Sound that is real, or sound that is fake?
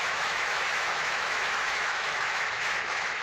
fake